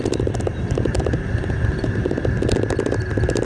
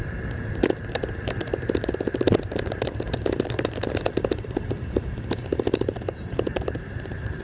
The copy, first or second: second